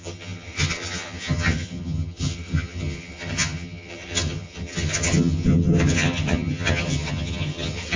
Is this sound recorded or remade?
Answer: remade